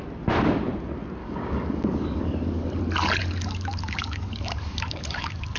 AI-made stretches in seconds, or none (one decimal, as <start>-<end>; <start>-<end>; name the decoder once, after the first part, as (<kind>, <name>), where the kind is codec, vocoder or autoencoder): 1.2-2.8 (codec, DAC); 3.2-5.6